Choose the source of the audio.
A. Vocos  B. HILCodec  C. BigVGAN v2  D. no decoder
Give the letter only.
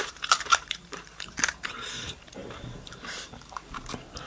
C